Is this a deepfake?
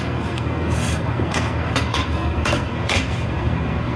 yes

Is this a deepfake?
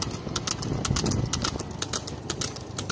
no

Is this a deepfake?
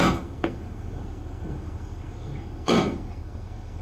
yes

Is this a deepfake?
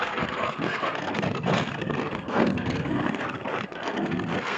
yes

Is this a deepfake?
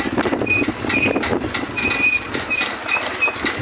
no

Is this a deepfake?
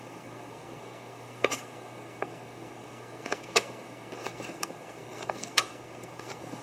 yes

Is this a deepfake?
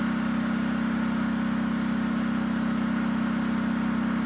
no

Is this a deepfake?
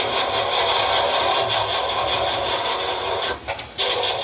no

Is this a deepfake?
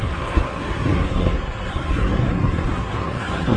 yes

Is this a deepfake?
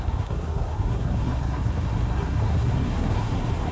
yes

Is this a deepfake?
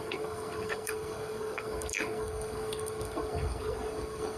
yes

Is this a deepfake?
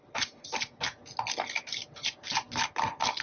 no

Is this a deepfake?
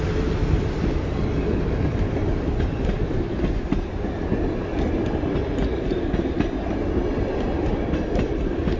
no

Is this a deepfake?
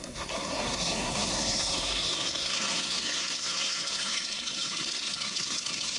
yes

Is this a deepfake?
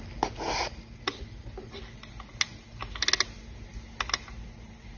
no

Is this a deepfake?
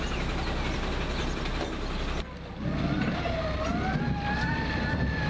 no